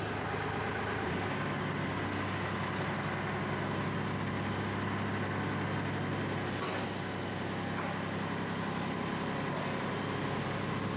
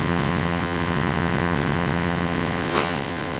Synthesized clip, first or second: second